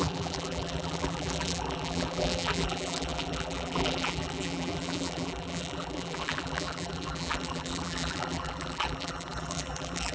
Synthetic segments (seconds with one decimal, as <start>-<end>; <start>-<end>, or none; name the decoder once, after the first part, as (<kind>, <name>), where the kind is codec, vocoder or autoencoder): 0.0-10.1 (vocoder, BigVGAN v2)